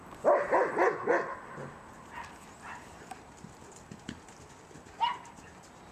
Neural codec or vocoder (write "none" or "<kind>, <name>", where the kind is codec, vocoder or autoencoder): none